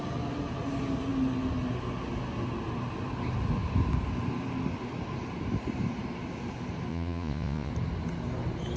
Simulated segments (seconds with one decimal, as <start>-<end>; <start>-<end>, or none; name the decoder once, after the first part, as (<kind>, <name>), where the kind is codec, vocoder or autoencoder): 6.9-7.7 (vocoder, Vocos)